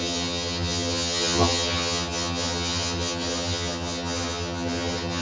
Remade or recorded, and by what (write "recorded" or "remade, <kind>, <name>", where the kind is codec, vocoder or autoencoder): remade, vocoder, HiFi-GAN